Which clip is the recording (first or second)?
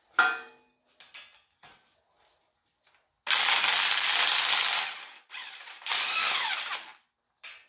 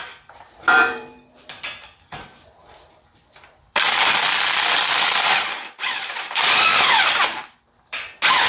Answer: first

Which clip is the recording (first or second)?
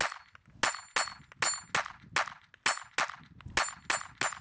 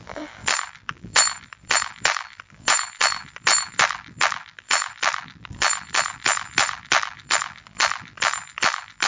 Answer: first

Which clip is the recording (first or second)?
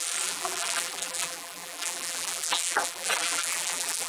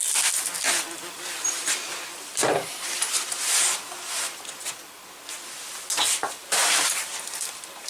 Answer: second